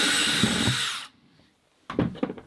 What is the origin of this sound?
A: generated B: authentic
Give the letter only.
B